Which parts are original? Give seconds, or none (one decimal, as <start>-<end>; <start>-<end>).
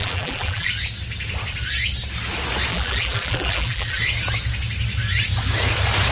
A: 0.7-2.7; 4.0-6.1